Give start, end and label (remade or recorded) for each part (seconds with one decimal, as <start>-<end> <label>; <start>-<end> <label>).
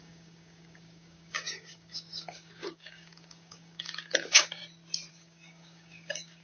0.0-4.6 remade; 4.6-5.1 recorded; 5.1-6.4 remade